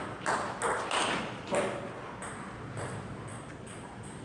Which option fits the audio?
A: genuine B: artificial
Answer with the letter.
A